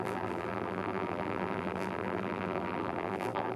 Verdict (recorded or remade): remade